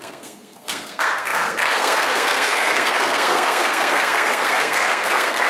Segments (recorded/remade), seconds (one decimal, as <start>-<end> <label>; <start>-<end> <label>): 0.0-5.5 remade